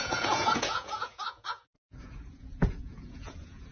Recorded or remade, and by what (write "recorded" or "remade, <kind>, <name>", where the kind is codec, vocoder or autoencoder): remade, vocoder, Vocos